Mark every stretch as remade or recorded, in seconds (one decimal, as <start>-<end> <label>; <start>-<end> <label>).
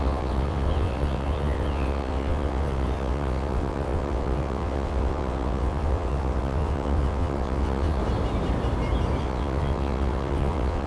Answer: 0.0-8.0 remade; 8.0-9.2 recorded; 9.2-10.9 remade